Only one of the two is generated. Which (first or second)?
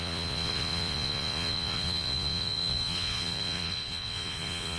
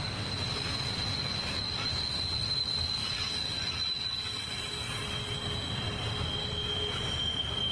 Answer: first